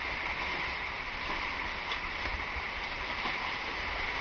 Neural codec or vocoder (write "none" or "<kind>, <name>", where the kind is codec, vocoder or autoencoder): none